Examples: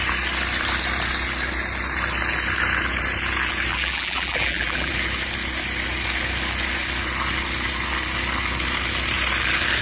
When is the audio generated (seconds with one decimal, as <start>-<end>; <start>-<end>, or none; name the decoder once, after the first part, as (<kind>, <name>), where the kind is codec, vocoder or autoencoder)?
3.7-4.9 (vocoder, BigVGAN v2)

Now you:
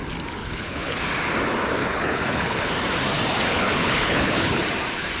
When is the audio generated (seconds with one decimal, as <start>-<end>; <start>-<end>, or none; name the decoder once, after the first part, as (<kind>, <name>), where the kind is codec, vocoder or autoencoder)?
0.4-1.0 (codec, HILCodec); 1.8-2.7; 3.5-4.6

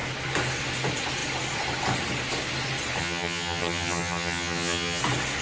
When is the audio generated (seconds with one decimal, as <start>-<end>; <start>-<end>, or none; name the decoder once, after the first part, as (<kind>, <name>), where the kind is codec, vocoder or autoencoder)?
3.0-5.0 (vocoder, HiFi-GAN)

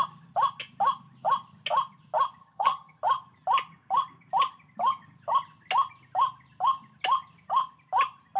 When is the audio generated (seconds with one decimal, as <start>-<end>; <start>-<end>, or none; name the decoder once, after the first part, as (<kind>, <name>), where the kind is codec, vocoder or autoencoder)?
2.4-3.0 (vocoder, HiFi-GAN)

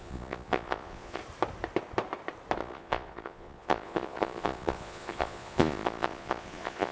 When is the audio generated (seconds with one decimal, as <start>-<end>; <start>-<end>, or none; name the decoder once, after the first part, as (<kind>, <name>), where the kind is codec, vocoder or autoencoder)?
0.0-1.2 (vocoder, Vocos); 2.6-6.9

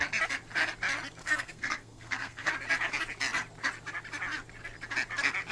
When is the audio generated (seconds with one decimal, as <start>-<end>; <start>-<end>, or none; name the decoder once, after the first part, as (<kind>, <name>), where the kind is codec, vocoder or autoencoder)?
1.2-2.5 (codec, SNAC)

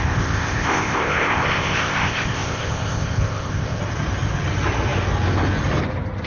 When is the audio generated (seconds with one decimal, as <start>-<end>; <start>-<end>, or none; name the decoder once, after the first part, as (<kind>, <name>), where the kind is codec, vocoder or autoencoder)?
0.0-3.8 (codec, ZipCodec)

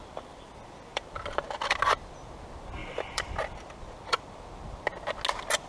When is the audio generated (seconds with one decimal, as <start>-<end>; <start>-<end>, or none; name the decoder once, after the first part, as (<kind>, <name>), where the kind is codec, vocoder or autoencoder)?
0.9-1.8 (vocoder, BigVGAN v2); 2.8-4.4